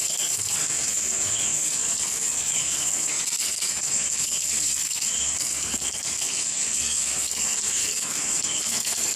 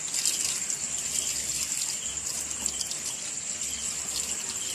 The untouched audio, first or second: second